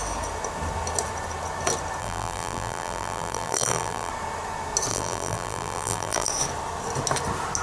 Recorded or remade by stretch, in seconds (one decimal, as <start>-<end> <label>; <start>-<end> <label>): 0.0-2.0 recorded; 2.0-4.1 remade; 4.1-4.9 recorded; 4.9-6.3 remade; 6.3-7.6 recorded